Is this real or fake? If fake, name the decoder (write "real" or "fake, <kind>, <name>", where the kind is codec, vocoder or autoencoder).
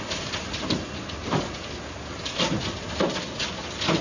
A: real